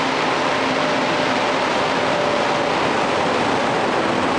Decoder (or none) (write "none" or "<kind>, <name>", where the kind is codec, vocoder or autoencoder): none